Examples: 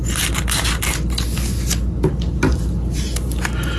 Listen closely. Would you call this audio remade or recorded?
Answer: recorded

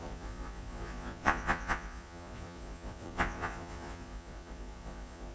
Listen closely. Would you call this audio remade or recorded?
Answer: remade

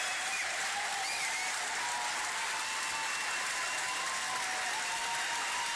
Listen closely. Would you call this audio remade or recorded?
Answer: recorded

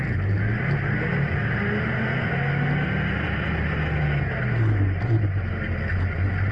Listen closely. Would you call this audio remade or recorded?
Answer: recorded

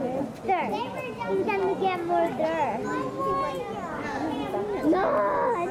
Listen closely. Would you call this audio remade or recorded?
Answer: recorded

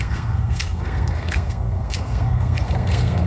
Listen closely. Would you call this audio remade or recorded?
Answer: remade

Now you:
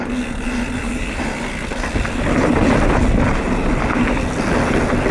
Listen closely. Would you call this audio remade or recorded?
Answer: recorded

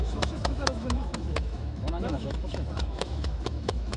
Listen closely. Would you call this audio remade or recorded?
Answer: remade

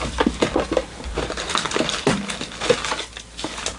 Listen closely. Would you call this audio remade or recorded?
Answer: recorded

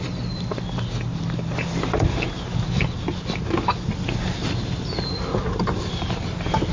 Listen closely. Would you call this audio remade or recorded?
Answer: recorded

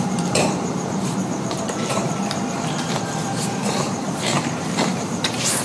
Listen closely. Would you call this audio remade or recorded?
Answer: remade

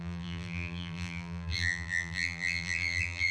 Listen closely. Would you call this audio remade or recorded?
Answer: remade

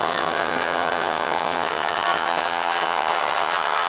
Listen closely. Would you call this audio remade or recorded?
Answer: remade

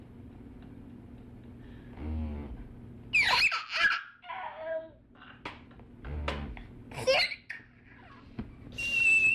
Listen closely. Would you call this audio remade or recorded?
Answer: recorded